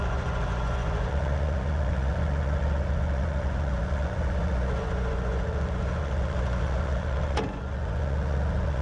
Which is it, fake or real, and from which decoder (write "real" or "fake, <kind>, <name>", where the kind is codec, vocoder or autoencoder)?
fake, vocoder, Vocos